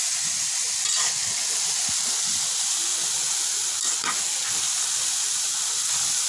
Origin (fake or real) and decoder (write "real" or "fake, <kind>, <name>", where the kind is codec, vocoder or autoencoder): real